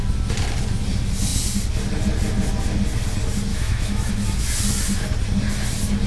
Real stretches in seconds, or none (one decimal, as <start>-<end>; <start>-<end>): 0.0-3.5; 4.1-6.1